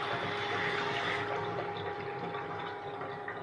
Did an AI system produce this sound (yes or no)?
no